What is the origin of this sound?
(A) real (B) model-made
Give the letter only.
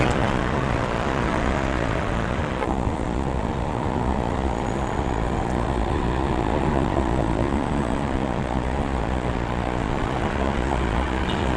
B